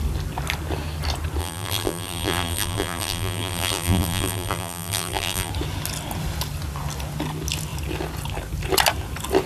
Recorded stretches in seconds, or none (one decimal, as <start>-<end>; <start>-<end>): 0.0-1.4; 5.5-9.5